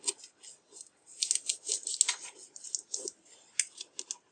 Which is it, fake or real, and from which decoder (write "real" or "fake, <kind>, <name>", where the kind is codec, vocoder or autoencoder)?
real